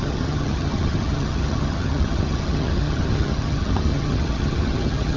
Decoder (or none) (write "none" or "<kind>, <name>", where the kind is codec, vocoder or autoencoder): vocoder, HiFi-GAN